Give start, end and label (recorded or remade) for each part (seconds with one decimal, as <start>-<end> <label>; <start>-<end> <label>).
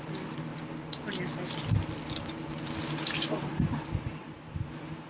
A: 0.0-5.1 recorded